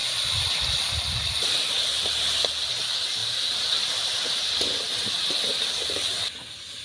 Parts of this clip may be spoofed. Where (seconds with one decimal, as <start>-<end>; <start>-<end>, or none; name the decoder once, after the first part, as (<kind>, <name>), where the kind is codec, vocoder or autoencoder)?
0.0-2.7 (vocoder, BigVGAN v2); 3.2-4.1; 5.5-6.3